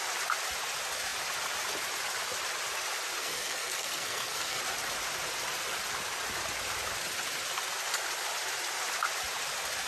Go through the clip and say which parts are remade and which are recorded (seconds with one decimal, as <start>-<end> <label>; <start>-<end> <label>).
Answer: 0.0-3.2 recorded; 3.2-4.6 remade; 4.6-9.9 recorded